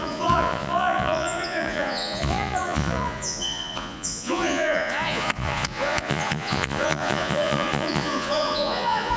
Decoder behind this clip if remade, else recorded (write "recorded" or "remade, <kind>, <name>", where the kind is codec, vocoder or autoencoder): remade, vocoder, Vocos